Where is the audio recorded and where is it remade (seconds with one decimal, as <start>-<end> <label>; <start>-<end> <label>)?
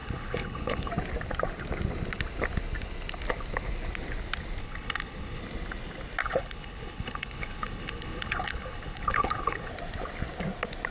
0.0-0.9 remade; 0.9-4.6 recorded; 4.6-5.4 remade; 5.4-6.2 recorded; 6.2-9.7 remade; 9.7-10.9 recorded